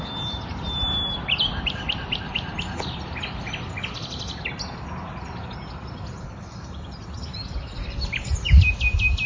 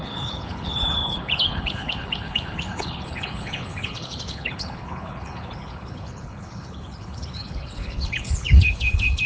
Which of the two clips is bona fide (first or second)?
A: first